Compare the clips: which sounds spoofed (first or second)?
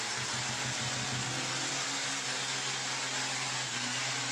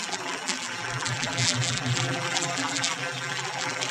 second